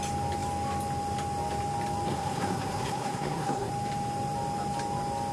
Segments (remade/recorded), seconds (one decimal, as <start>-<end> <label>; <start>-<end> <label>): 0.0-2.1 recorded; 2.1-3.7 remade; 3.7-5.3 recorded